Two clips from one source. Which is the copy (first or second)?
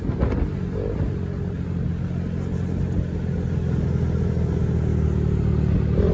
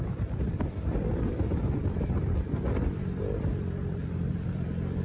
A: second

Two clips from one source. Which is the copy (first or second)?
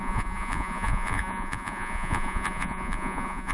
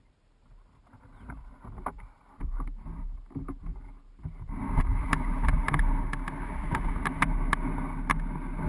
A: first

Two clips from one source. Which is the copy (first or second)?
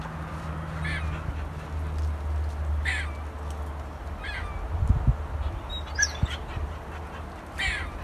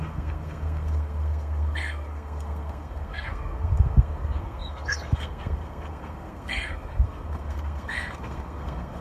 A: second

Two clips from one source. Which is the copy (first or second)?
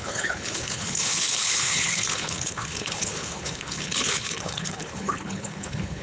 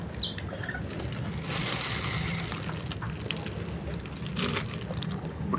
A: first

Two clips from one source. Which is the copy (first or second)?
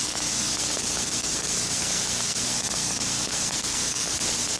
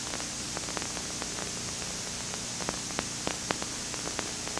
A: first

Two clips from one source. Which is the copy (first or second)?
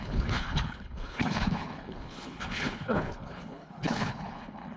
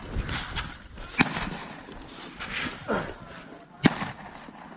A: first